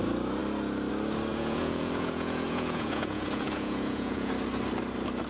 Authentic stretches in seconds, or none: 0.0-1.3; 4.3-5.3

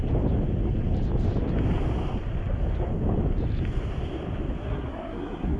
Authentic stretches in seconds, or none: 0.0-4.6

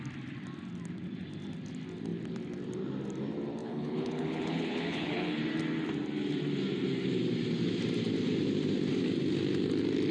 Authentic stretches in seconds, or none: 0.0-3.6; 5.4-10.1

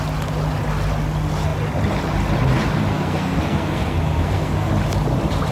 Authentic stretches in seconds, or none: 0.0-2.9; 4.7-5.5

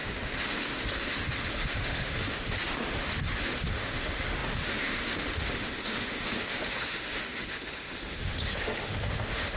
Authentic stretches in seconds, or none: none

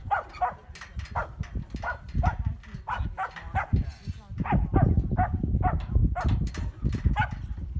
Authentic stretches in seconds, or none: 0.0-7.8